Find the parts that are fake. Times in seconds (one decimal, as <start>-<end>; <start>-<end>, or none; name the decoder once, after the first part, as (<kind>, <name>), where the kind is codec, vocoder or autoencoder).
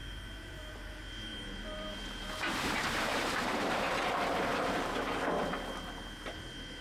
0.0-0.9 (vocoder, BigVGAN v2); 1.3-4.1; 4.5-5.7